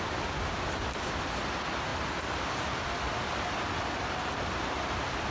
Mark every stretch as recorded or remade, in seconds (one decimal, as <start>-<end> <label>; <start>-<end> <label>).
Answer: 0.0-5.3 recorded